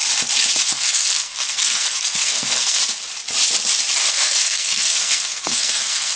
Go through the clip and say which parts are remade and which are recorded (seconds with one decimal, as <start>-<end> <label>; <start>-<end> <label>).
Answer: 0.0-0.6 recorded; 0.6-2.8 remade; 2.8-4.1 recorded; 4.1-6.2 remade